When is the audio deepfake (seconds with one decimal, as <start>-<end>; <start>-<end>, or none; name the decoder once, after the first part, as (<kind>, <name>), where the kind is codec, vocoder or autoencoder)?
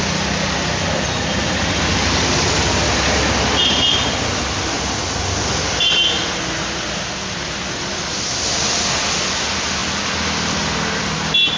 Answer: none